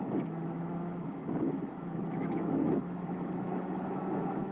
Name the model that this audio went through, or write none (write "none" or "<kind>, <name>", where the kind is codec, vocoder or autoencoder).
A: autoencoder, DAC-VAE